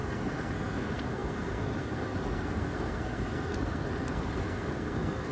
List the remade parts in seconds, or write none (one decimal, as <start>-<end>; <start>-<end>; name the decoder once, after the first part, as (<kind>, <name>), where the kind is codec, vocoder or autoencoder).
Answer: 0.0-5.3 (codec, SNAC)